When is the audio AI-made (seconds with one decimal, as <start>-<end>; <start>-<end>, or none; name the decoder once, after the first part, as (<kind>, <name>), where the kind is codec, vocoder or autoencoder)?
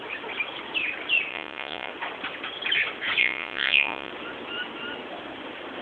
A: 1.3-1.9 (vocoder, Vocos); 3.2-4.1